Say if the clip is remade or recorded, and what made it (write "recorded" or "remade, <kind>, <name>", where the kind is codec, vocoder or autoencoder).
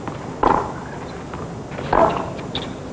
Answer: recorded